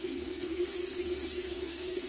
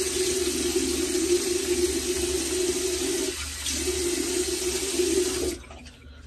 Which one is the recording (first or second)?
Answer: second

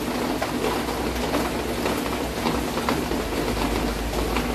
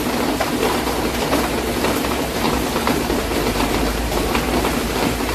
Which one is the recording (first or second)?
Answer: first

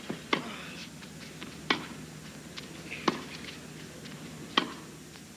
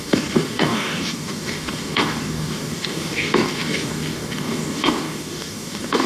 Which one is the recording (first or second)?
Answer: first